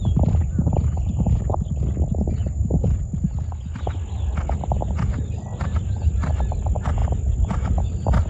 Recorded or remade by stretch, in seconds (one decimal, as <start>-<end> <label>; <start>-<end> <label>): 0.0-1.5 remade; 1.5-2.4 recorded; 2.4-3.1 remade; 3.1-8.3 recorded